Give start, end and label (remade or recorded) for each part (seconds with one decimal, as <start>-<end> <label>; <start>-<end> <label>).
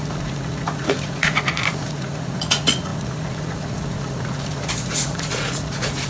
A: 0.0-6.1 remade